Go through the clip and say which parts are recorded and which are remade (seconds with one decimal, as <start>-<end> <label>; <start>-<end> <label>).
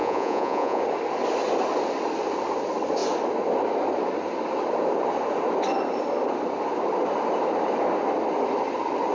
0.0-0.8 remade; 0.8-9.1 recorded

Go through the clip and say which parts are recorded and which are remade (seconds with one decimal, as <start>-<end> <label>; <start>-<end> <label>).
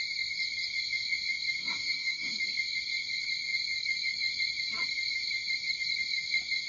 0.0-1.6 recorded; 1.6-2.4 remade; 2.4-6.7 recorded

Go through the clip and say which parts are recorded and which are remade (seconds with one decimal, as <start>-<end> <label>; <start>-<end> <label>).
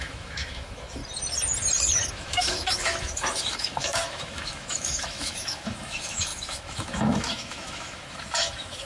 0.0-1.0 remade; 1.0-2.1 recorded; 2.1-8.9 remade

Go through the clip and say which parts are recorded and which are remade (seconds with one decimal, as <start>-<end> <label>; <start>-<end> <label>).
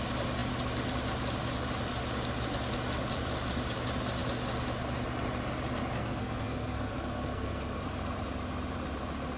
0.0-6.0 recorded; 6.0-7.8 remade; 7.8-9.4 recorded